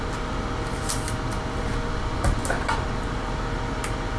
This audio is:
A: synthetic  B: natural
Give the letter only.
B